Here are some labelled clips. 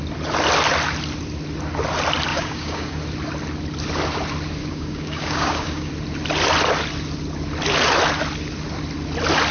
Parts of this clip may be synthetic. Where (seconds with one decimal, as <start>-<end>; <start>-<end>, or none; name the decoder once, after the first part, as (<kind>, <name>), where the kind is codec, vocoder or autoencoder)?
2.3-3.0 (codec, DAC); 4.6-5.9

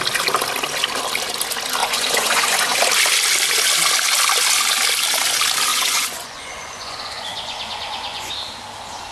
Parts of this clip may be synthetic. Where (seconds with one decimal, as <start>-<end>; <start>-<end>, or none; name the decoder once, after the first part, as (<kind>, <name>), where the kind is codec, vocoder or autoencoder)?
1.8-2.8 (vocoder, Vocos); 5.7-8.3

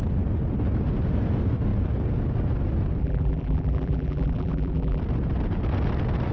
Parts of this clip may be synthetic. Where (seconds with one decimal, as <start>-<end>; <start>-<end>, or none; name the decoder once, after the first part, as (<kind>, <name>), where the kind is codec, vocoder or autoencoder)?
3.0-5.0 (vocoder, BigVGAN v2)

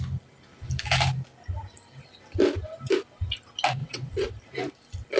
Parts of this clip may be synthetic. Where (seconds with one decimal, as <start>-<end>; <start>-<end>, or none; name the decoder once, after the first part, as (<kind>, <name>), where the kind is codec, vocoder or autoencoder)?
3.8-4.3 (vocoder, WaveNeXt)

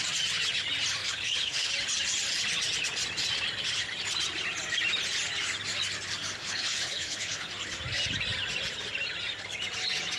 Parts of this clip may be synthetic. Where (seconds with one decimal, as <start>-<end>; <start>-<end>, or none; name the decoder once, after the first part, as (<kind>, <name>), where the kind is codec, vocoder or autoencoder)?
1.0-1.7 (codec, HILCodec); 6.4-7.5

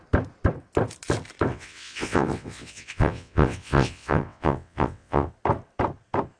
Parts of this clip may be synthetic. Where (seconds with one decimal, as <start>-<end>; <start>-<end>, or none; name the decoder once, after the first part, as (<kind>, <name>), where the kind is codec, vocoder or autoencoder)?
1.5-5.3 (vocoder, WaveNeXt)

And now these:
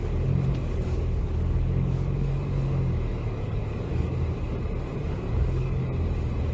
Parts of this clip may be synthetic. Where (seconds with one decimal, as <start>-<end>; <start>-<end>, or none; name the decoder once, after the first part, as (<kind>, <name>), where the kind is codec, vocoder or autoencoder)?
0.6-4.5 (codec, DAC); 4.9-5.8

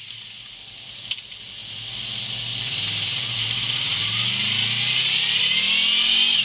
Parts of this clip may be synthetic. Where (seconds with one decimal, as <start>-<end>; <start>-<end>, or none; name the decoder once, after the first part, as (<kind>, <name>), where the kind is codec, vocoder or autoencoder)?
none